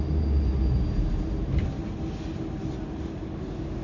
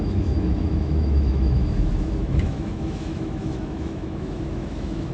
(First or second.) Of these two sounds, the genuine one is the first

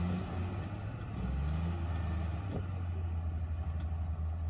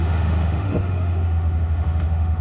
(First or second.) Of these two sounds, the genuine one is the first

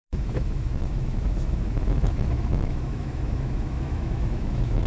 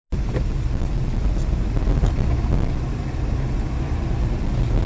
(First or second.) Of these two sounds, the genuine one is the second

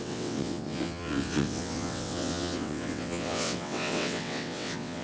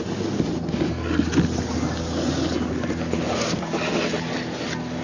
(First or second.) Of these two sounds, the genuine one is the second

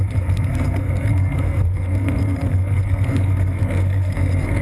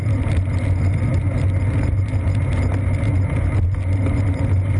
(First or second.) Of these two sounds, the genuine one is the second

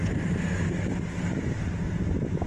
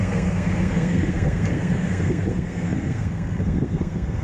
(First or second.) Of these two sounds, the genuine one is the first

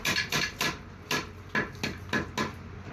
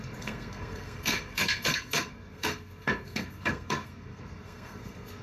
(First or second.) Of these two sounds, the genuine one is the first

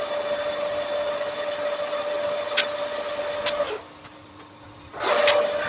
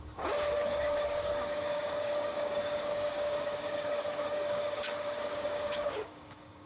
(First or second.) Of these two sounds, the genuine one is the first